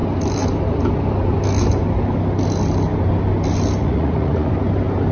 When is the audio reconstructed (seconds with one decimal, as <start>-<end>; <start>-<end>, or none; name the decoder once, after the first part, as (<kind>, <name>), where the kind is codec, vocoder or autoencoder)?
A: 3.8-4.5 (vocoder, Vocos)